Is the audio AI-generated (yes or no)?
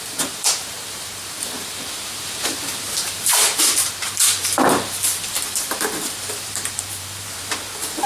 yes